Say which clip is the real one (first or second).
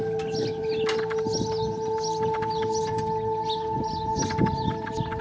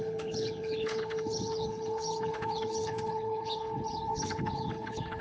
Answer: first